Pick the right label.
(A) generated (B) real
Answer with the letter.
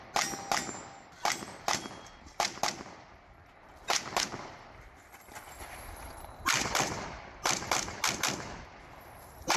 B